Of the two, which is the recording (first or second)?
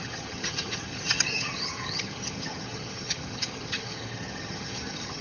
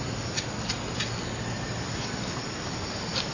second